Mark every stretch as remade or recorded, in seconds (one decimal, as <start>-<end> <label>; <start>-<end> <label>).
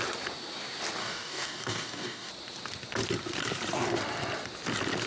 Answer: 0.0-1.0 recorded; 1.0-2.3 remade; 2.3-5.1 recorded